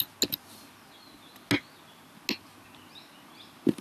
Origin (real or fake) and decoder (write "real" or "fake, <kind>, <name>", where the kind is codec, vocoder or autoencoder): real